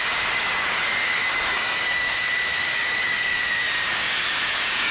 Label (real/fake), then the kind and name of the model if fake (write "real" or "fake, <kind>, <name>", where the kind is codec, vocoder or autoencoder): fake, codec, DAC